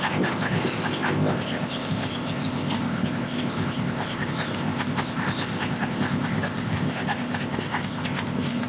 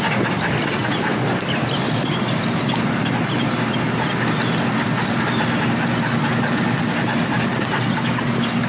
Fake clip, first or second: first